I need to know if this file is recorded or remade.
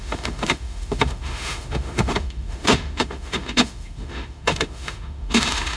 remade